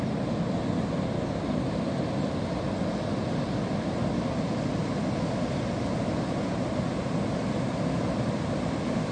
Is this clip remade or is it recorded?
recorded